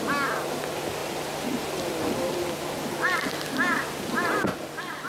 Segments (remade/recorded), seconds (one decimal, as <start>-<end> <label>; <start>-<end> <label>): 0.0-5.1 recorded